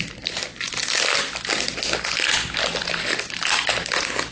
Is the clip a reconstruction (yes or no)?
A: no